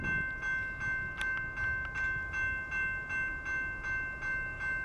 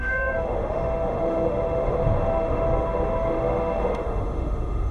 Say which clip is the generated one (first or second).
second